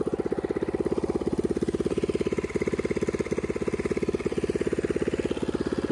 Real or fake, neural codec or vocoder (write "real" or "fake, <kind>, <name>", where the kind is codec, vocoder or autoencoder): real